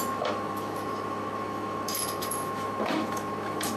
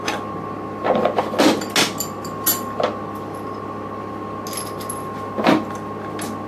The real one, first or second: second